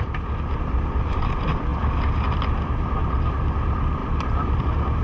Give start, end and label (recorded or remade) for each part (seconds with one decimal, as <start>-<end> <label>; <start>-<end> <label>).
0.0-4.0 recorded; 4.0-4.6 remade; 4.6-5.0 recorded